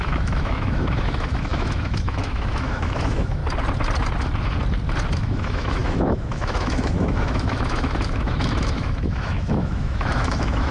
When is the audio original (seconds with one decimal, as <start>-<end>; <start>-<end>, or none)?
3.4-5.1